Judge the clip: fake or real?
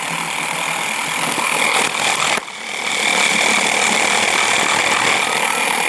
real